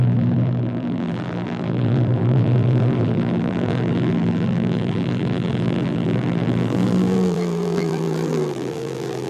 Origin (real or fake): fake